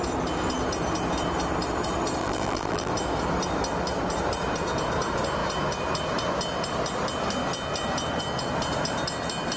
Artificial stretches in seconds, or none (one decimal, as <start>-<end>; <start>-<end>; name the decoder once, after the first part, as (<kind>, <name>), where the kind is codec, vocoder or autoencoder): 2.2-2.9 (vocoder, BigVGAN v2)